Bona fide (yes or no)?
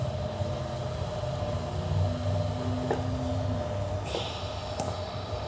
yes